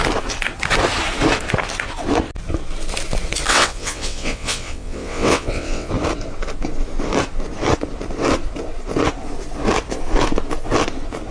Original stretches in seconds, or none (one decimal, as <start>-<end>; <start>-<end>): 0.0-3.5; 5.9-11.3